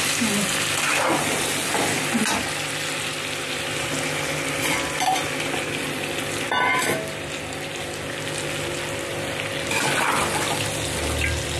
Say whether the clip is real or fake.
real